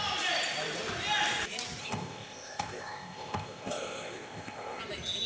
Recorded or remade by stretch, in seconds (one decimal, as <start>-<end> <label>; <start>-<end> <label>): 0.0-1.8 recorded; 1.8-4.8 remade; 4.8-5.3 recorded